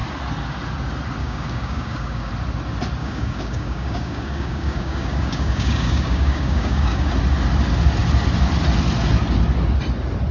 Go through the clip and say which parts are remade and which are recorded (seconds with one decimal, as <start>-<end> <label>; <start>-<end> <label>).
0.0-1.2 recorded; 1.2-2.3 remade; 2.3-3.0 recorded; 3.0-7.1 remade; 7.1-10.3 recorded